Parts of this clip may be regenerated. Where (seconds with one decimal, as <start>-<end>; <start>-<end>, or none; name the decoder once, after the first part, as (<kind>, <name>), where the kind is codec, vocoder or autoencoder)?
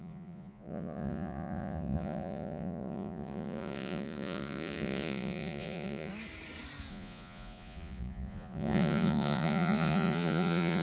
0.0-6.1 (vocoder, Vocos); 6.9-10.8